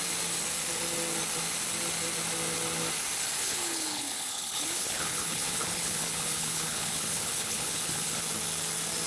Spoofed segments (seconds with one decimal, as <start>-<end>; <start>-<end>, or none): 3.4-8.2